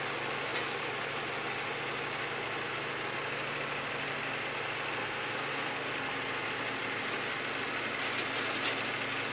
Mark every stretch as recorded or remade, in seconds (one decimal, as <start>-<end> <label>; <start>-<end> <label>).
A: 0.0-5.0 recorded; 5.0-5.9 remade; 5.9-9.3 recorded